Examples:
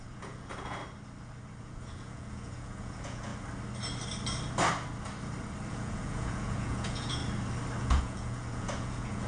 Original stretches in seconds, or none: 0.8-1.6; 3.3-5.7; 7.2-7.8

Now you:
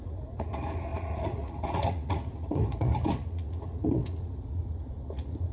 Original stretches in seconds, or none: none

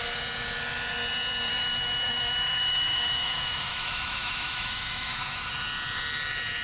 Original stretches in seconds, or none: 0.0-1.5; 5.5-6.6

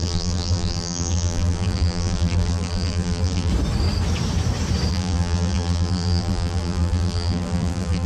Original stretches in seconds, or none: 3.5-4.9

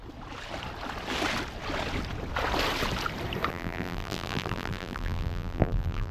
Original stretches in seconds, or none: 0.0-3.5

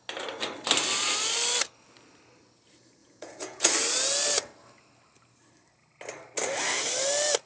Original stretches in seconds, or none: 0.0-3.0; 3.7-7.5

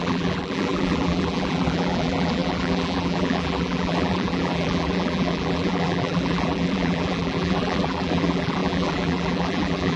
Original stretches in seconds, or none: none